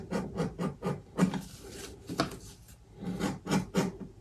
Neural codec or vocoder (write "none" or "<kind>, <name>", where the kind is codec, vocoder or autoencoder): none